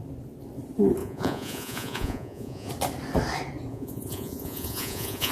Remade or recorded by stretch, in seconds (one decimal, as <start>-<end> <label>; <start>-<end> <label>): 0.0-1.0 recorded; 1.0-2.7 remade; 2.7-3.7 recorded; 3.7-5.3 remade